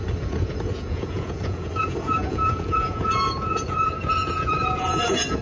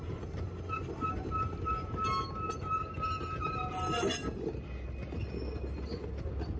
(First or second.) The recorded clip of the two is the second